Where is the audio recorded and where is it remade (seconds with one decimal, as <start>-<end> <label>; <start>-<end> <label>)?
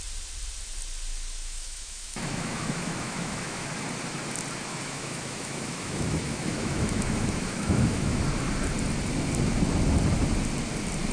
0.0-1.4 recorded; 1.4-3.7 remade; 3.7-4.7 recorded; 4.7-8.2 remade; 8.2-11.1 recorded